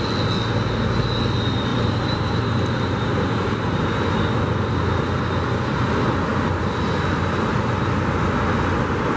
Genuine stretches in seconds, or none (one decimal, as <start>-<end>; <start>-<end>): 0.0-1.7; 3.8-9.2